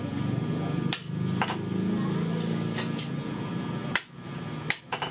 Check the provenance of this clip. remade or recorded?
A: recorded